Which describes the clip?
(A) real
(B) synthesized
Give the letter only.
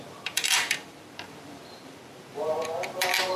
B